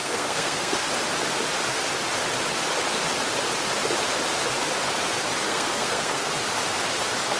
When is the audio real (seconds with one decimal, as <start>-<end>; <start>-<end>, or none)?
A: 0.9-5.5; 6.3-7.4